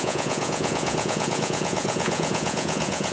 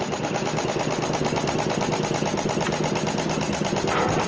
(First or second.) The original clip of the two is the second